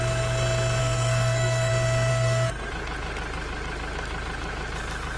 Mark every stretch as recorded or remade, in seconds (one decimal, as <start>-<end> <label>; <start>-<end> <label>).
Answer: 0.0-0.8 recorded; 0.8-1.7 remade; 1.7-2.1 recorded; 2.1-2.7 remade; 2.7-5.2 recorded